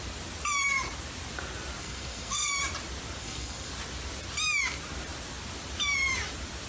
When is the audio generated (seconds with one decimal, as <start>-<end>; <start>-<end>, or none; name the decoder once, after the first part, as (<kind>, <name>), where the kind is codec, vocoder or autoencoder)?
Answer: 1.8-2.5 (codec, SNAC); 3.2-3.7